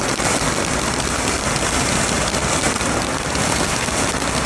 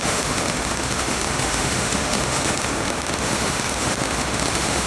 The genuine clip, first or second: first